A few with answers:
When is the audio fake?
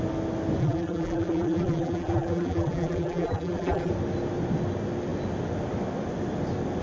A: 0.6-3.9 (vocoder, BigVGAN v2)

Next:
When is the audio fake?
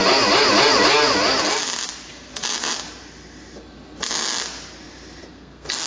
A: 5.2-5.9 (codec, SNAC)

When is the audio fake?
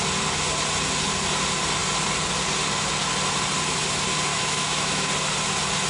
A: 4.3-5.1 (autoencoder, DAC-VAE)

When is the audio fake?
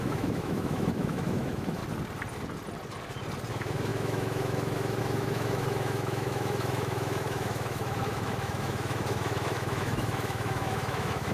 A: 0.0-1.8 (autoencoder, DAC-VAE); 3.5-11.3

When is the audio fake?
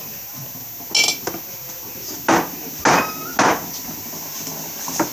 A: none